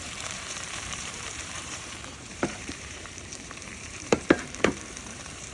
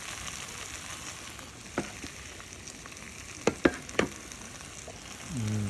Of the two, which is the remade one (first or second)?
first